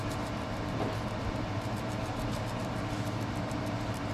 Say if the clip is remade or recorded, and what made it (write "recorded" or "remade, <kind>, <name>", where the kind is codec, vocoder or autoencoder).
remade, vocoder, BigVGAN v2